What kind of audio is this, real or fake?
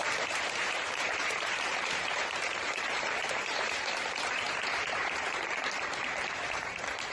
fake